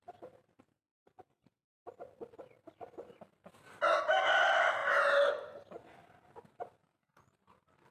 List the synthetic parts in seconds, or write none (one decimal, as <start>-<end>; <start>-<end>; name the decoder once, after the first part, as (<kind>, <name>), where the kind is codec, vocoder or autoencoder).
none